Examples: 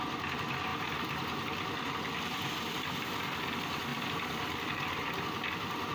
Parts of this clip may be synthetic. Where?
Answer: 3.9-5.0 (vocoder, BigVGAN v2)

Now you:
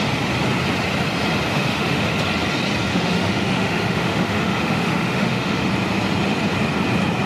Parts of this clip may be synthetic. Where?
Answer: 1.5-2.1 (autoencoder, DAC-VAE); 2.9-5.7

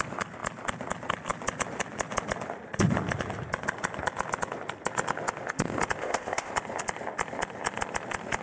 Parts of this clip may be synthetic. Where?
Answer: 6.0-6.5 (codec, ZipCodec)

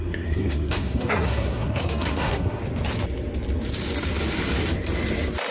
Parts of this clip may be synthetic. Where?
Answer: 0.0-2.6 (codec, SNAC)

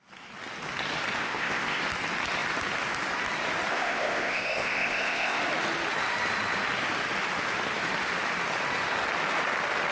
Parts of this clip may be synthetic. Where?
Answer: 1.2-1.8 (codec, ZipCodec); 3.7-5.4